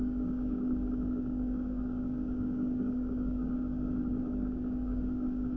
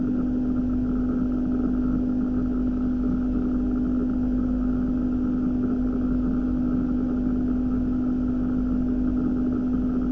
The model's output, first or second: first